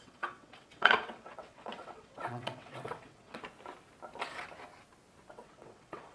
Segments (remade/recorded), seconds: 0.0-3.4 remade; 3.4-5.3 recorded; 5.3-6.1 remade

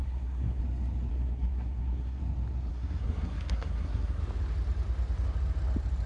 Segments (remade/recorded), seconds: 0.0-0.6 remade; 0.6-1.1 recorded; 1.1-2.2 remade; 2.2-2.7 recorded; 2.7-4.2 remade; 4.2-6.1 recorded

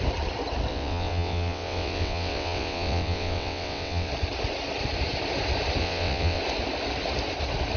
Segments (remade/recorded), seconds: 0.0-0.7 recorded; 0.7-4.1 remade; 4.1-5.8 recorded; 5.8-6.4 remade; 6.4-7.8 recorded

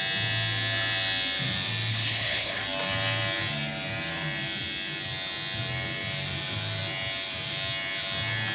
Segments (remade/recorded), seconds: 0.0-1.9 recorded; 1.9-2.6 remade; 2.6-8.5 recorded

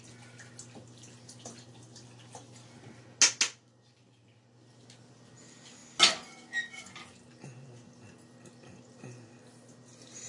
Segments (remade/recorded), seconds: 0.0-10.3 recorded

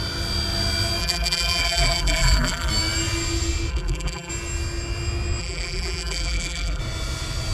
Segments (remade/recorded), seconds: 0.0-1.0 recorded; 1.0-2.7 remade; 2.7-3.7 recorded; 3.7-4.3 remade; 4.3-5.4 recorded; 5.4-6.8 remade; 6.8-7.5 recorded